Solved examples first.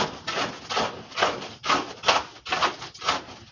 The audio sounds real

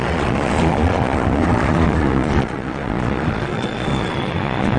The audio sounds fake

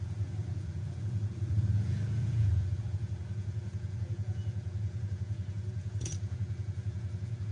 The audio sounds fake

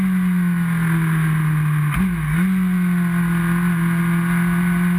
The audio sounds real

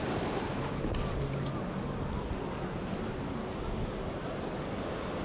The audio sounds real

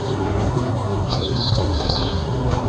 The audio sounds fake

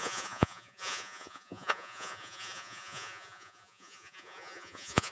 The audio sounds fake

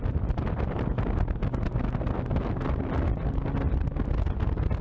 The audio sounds real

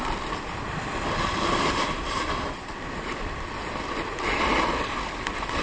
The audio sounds real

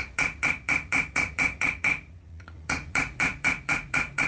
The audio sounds fake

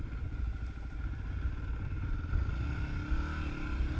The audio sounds real